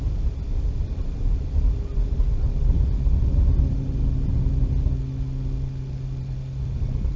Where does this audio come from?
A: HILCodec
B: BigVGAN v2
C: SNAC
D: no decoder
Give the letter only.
D